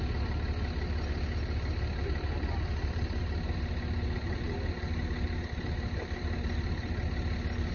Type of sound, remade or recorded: recorded